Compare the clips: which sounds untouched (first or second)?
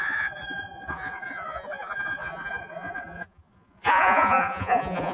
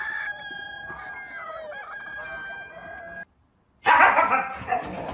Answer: second